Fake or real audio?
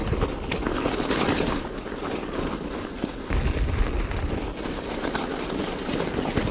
real